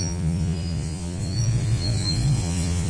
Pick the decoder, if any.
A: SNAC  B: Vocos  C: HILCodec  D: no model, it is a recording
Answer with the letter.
B